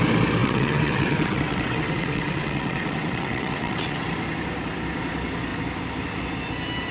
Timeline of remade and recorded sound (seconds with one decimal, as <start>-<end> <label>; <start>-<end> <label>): 0.0-0.4 recorded; 0.4-4.0 remade; 4.0-6.9 recorded